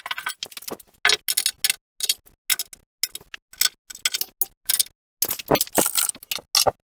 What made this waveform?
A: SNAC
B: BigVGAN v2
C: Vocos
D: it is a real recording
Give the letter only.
D